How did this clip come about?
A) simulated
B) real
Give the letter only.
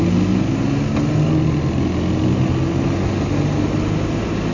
B